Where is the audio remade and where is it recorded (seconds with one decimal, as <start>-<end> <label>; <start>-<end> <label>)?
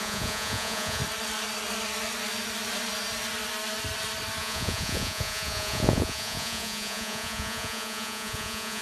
0.0-1.0 remade; 1.0-4.4 recorded; 4.4-8.8 remade